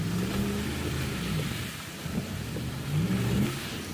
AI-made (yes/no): no